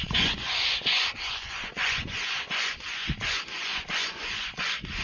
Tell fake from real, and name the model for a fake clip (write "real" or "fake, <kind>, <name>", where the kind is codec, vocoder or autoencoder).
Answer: fake, vocoder, Vocos